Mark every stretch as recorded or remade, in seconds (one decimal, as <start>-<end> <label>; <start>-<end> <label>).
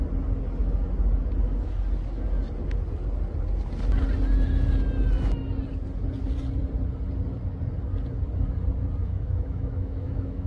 0.0-9.0 recorded; 9.0-10.5 remade